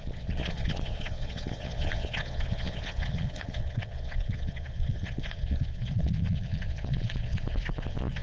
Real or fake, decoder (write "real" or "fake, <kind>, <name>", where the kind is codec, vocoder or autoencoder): fake, vocoder, Vocos